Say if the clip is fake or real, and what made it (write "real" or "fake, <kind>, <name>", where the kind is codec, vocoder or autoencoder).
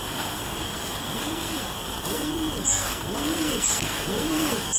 fake, codec, SNAC